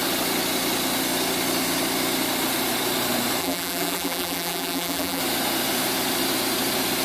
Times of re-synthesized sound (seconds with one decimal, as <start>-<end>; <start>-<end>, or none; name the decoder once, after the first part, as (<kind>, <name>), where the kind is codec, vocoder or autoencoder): 3.4-5.2 (vocoder, BigVGAN v2)